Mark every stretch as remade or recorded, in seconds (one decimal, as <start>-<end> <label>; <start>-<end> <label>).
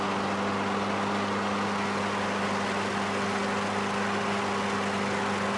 0.0-5.6 recorded